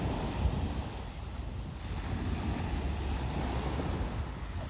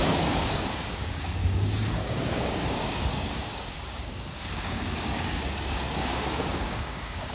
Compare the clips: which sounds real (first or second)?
first